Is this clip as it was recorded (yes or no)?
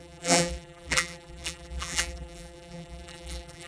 no